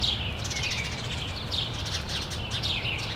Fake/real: real